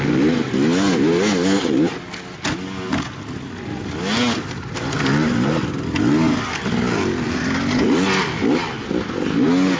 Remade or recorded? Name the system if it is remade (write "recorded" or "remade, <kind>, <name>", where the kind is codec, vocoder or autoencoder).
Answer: recorded